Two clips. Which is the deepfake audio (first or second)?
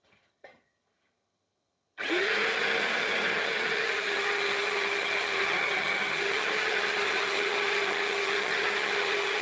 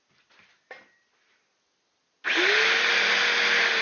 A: first